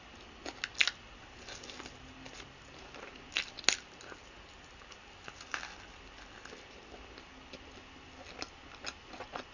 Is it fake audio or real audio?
real